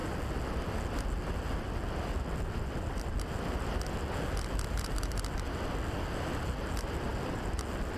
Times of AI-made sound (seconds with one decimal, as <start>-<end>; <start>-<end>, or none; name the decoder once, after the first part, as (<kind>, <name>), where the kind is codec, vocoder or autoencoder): none